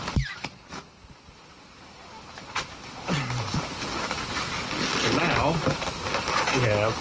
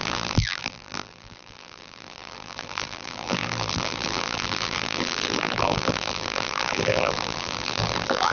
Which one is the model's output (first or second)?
second